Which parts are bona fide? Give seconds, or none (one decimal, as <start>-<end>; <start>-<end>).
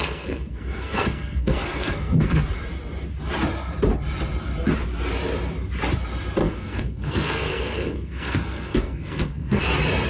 2.4-6.4; 9.6-10.1